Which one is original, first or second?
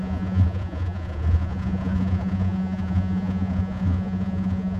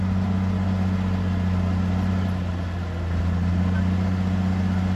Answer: second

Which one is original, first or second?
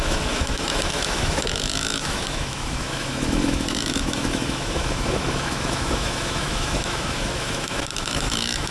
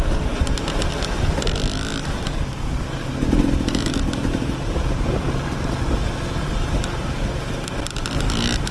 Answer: second